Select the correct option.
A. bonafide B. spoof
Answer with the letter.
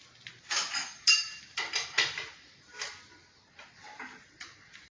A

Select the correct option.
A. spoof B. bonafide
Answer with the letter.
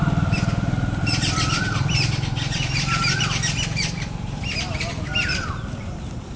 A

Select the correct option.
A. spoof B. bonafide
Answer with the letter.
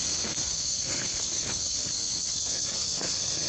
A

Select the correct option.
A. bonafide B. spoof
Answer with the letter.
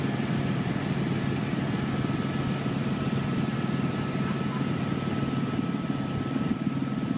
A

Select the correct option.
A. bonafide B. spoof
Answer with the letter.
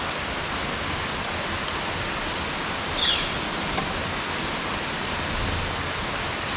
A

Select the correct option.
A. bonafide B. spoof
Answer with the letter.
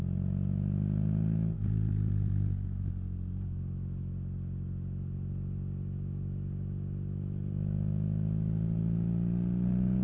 A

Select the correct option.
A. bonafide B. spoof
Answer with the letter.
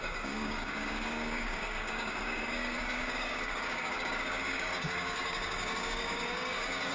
B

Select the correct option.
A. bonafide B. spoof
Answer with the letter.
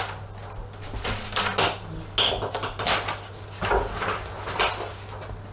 A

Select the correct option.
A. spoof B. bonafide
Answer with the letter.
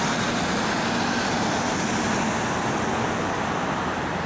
B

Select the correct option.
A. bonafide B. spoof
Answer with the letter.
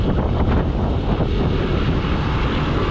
A